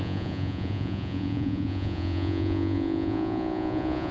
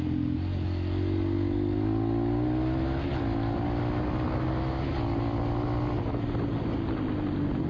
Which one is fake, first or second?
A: first